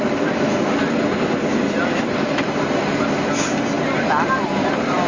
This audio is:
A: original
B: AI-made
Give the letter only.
A